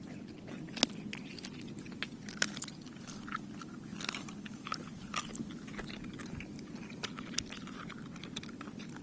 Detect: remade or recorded recorded